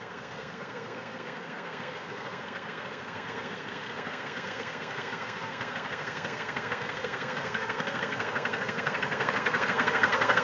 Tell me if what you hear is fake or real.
fake